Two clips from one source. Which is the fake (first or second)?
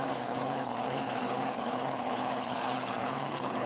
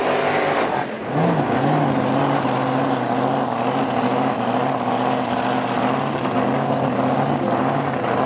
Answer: first